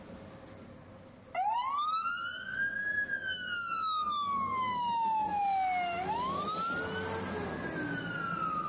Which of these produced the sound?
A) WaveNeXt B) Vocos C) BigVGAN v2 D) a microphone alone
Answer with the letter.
D